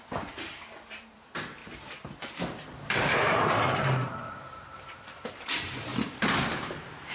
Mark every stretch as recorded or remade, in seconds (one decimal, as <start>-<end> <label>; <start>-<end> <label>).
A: 0.0-5.9 remade; 5.9-7.1 recorded